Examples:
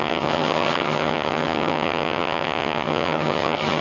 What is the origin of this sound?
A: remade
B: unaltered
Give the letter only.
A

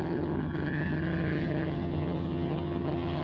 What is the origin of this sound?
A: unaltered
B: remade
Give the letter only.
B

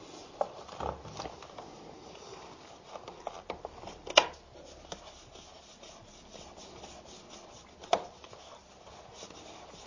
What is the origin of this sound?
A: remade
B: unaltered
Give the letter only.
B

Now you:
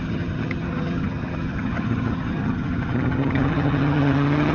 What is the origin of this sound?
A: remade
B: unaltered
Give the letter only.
A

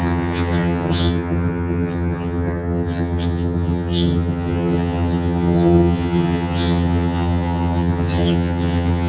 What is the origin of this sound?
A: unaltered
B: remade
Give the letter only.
B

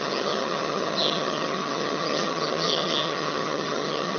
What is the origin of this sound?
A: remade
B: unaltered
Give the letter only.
A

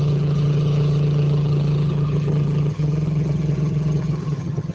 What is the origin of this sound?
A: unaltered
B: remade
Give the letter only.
B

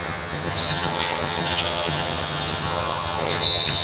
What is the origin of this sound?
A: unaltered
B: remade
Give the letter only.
B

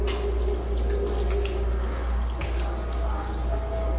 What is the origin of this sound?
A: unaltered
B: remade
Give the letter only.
A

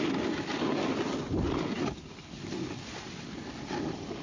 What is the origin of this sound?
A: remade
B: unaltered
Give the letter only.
B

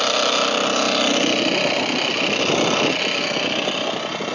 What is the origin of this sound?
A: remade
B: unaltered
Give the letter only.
B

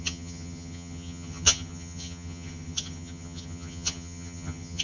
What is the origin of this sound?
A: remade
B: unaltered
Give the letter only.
A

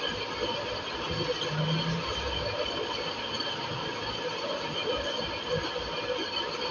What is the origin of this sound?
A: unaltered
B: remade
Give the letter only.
A